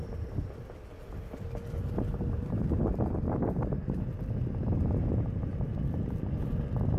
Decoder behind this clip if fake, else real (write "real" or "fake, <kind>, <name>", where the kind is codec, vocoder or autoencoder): real